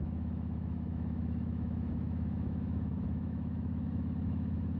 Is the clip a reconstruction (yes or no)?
yes